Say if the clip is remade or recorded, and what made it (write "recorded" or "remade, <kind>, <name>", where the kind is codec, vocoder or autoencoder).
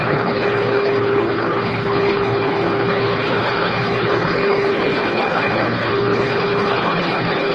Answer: remade, codec, HILCodec